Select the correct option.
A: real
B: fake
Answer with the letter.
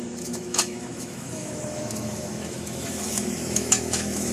B